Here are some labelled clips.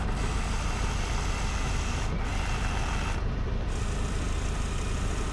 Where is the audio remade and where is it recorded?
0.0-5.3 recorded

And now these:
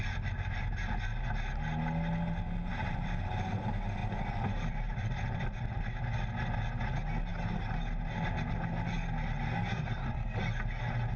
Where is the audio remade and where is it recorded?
0.0-2.7 recorded; 2.7-3.3 remade; 3.3-4.0 recorded; 4.0-5.1 remade; 5.1-11.2 recorded